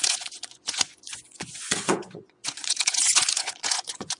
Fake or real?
fake